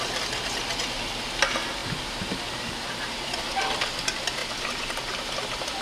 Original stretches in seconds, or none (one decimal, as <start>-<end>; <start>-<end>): 0.0-5.8